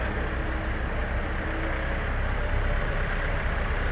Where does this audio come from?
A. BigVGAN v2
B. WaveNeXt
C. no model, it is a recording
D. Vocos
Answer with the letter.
A